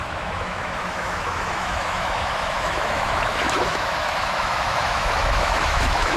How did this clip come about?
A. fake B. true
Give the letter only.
A